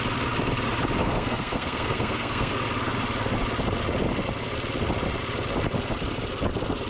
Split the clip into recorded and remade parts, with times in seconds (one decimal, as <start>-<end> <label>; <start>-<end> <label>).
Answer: 0.0-1.0 recorded; 1.0-2.5 remade; 2.5-6.9 recorded